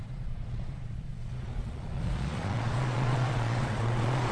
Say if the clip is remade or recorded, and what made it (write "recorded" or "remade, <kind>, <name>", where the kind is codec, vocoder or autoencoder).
remade, vocoder, Vocos